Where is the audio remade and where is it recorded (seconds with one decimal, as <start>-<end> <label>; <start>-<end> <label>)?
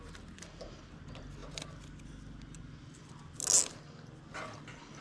0.0-5.0 recorded